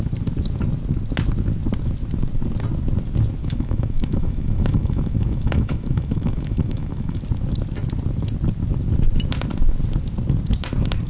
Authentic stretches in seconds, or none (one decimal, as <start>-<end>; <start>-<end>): 0.0-3.4; 7.2-11.1